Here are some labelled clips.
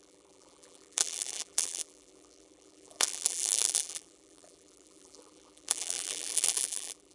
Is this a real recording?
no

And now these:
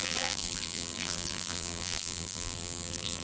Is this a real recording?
no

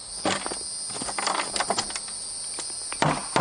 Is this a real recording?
yes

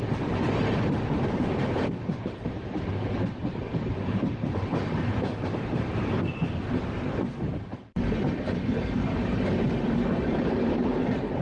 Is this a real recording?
no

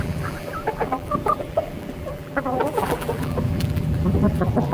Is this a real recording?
no